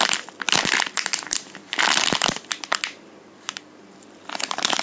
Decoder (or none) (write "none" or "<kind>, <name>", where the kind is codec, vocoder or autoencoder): none